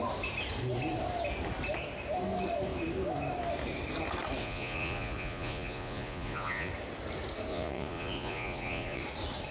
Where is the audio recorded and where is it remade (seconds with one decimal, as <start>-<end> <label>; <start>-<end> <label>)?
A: 0.0-4.4 recorded; 4.4-6.7 remade; 6.7-7.5 recorded; 7.5-9.0 remade; 9.0-9.5 recorded